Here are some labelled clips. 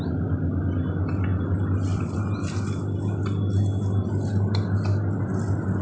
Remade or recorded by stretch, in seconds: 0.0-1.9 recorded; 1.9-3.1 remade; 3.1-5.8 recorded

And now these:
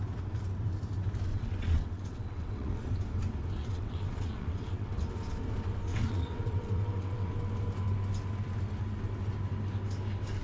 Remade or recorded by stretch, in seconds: 0.0-1.3 recorded; 1.3-2.9 remade; 2.9-3.6 recorded; 3.6-4.9 remade; 4.9-5.9 recorded; 5.9-7.3 remade; 7.3-10.4 recorded

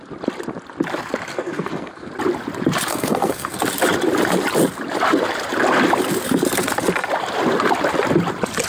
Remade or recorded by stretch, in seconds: 0.0-1.3 recorded; 1.3-2.1 remade; 2.1-2.9 recorded; 2.9-3.6 remade; 3.6-8.7 recorded

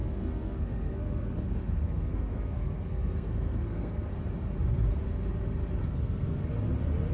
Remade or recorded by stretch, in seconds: 0.0-4.1 remade; 4.1-5.8 recorded; 5.8-6.4 remade; 6.4-7.1 recorded

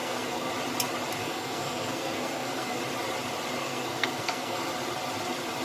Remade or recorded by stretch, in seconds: 0.0-0.5 remade; 0.5-1.2 recorded; 1.2-2.8 remade; 2.8-3.6 recorded; 3.6-4.6 remade; 4.6-5.6 recorded

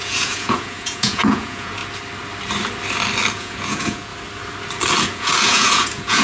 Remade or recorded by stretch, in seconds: 0.0-1.8 remade; 1.8-3.3 recorded; 3.3-4.1 remade; 4.1-5.0 recorded; 5.0-6.2 remade